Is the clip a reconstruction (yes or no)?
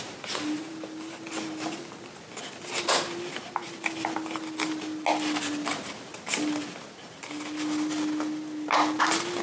no